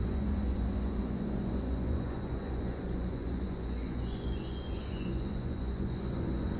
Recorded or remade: remade